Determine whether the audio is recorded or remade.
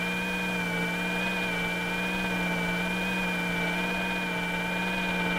recorded